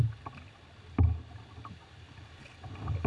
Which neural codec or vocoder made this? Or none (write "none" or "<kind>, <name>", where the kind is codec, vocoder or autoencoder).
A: none